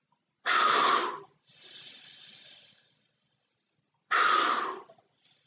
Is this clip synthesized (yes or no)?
no